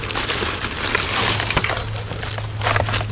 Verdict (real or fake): real